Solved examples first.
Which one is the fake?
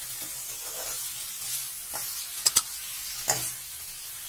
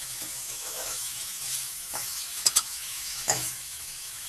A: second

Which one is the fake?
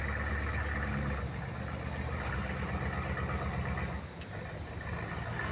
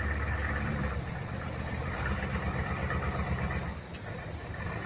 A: second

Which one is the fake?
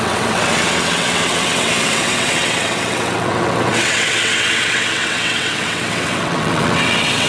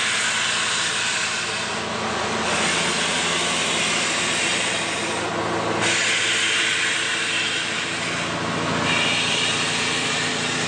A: first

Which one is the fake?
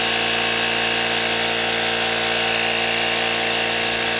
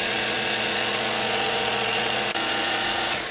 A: second